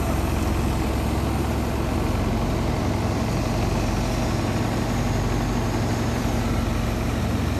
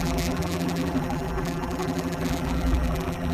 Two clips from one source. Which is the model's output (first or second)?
second